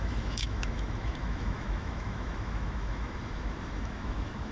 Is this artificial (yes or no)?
yes